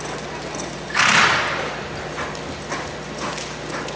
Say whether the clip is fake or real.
real